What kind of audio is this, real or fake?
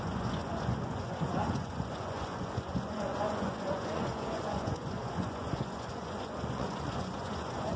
fake